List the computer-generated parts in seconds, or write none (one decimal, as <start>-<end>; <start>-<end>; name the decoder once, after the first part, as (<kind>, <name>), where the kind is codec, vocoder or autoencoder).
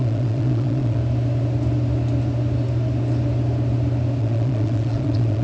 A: 0.0-1.0 (vocoder, Vocos); 4.2-5.4